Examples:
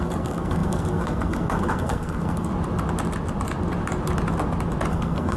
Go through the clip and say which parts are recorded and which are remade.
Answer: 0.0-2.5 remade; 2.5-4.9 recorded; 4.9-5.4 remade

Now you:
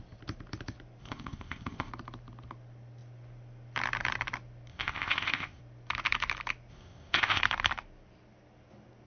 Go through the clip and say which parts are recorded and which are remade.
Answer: 0.0-1.0 recorded; 1.0-1.9 remade; 1.9-4.7 recorded; 4.7-5.6 remade; 5.6-6.7 recorded; 6.7-7.4 remade; 7.4-9.1 recorded

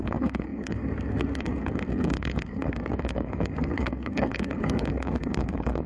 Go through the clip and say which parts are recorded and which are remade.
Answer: 0.0-5.9 remade

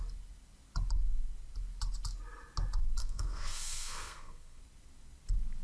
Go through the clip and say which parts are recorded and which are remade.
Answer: 0.0-3.0 recorded; 3.0-4.6 remade; 4.6-5.6 recorded

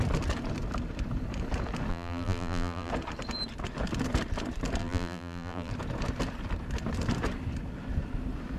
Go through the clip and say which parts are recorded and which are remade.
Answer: 0.0-1.9 recorded; 1.9-2.9 remade; 2.9-4.8 recorded; 4.8-5.7 remade; 5.7-8.6 recorded

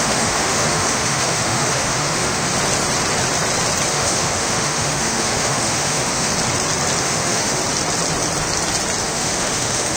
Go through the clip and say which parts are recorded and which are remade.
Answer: 0.0-2.5 remade; 2.5-3.9 recorded; 3.9-6.3 remade; 6.3-7.0 recorded; 7.0-7.6 remade; 7.6-9.0 recorded; 9.0-10.0 remade

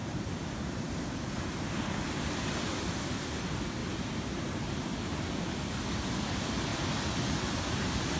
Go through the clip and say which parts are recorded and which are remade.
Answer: 0.0-8.2 recorded